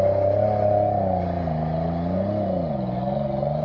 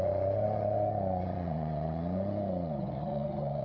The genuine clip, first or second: first